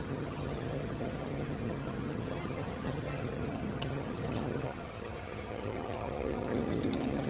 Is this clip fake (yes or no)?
yes